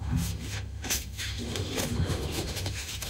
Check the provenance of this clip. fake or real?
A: fake